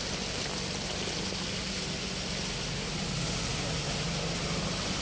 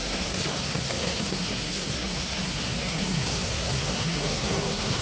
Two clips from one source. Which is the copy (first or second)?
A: second